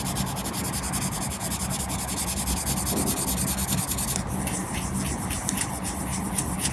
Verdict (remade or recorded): recorded